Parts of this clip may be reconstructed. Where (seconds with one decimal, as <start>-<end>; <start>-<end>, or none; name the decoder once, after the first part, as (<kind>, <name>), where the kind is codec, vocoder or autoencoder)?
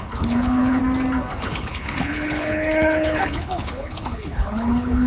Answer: 0.0-0.8 (codec, HILCodec); 1.3-5.1